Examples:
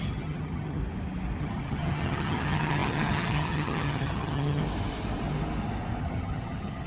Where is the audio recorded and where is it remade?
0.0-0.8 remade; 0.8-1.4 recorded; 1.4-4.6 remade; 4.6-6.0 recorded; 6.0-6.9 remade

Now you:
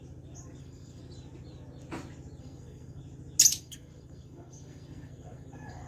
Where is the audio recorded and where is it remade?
0.0-0.6 recorded; 0.6-1.0 remade; 1.0-2.4 recorded; 2.4-3.0 remade; 3.0-3.6 recorded; 3.6-5.9 remade

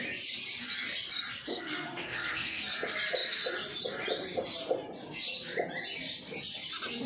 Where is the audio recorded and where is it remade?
0.0-1.5 recorded; 1.5-2.6 remade; 2.6-7.1 recorded

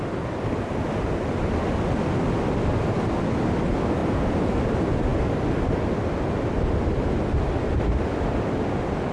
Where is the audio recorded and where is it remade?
0.0-4.0 recorded; 4.0-4.6 remade; 4.6-5.1 recorded; 5.1-5.7 remade; 5.7-9.1 recorded